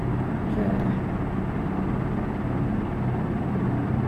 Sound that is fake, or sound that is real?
real